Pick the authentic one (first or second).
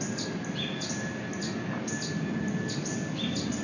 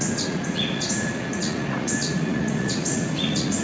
first